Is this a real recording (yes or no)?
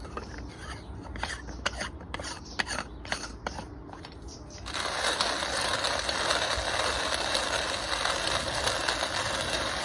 yes